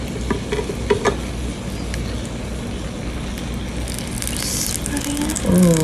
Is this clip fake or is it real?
real